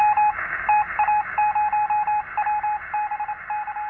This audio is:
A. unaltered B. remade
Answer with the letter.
A